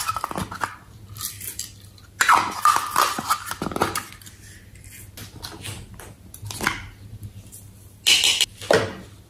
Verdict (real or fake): real